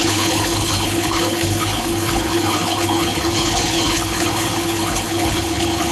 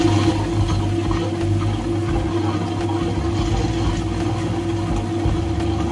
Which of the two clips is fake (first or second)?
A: first